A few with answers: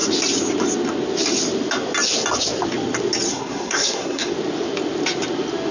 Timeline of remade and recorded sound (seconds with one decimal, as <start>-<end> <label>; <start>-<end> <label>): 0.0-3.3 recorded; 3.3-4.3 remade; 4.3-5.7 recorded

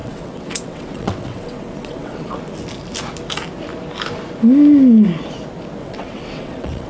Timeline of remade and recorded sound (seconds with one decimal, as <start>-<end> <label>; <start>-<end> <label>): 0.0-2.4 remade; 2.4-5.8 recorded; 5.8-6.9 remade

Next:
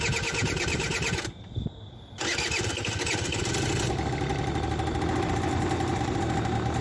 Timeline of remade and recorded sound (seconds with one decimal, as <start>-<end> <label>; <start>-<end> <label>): 0.0-6.8 recorded

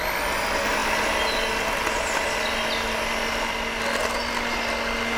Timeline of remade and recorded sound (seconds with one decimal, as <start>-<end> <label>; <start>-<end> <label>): 0.0-5.2 recorded

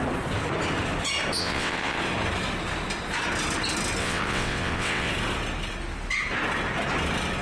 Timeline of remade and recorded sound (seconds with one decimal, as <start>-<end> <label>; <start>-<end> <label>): 0.0-1.4 recorded; 1.4-2.0 remade; 2.0-4.0 recorded; 4.0-5.1 remade; 5.1-7.4 recorded